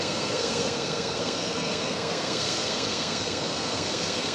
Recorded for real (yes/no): no